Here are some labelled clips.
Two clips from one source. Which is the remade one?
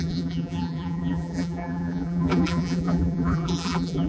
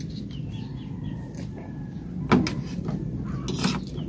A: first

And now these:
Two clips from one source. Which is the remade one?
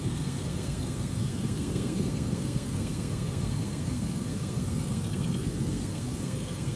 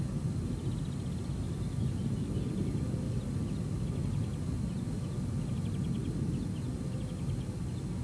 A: first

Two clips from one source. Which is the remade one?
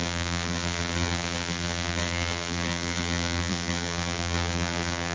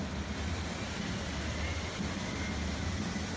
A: first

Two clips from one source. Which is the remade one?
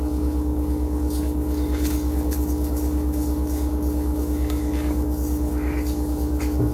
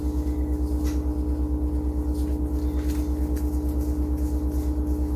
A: first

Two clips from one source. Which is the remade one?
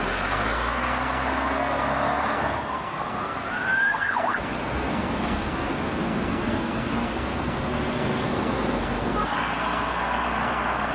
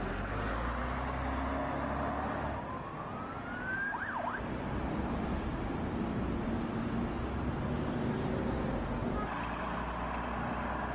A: first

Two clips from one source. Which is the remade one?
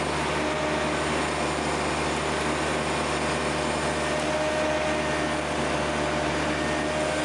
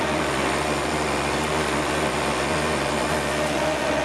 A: second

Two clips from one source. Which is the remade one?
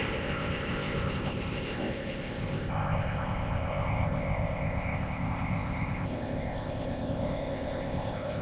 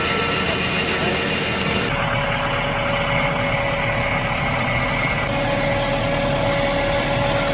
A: first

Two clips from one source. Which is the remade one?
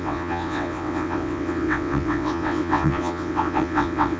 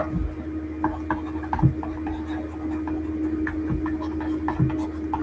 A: first